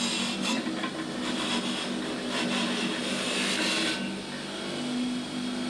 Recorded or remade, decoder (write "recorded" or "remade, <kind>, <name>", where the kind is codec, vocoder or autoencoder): recorded